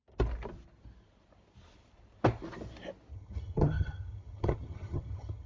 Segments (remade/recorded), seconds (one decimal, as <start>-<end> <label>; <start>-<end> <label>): 0.0-3.1 recorded; 3.1-5.5 remade